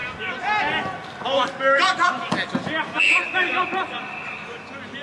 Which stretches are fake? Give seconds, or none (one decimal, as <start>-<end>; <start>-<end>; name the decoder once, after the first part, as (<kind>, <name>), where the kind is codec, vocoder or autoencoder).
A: none